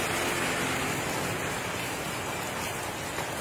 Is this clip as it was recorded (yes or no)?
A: yes